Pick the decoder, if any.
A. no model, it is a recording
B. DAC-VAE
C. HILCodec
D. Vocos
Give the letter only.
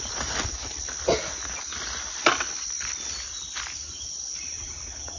A